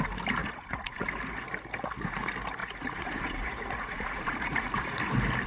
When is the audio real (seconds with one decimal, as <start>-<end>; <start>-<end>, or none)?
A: 0.0-0.4; 1.1-2.6; 5.1-5.5